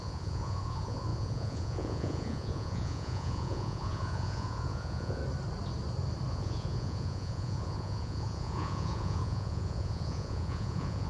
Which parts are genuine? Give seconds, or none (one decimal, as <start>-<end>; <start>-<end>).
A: 5.2-6.3